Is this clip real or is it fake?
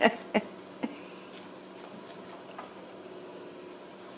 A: real